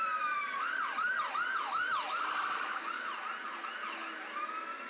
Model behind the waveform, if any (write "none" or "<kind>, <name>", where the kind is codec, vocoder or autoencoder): none